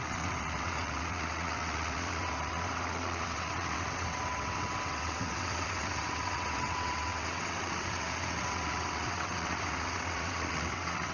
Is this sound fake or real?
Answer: fake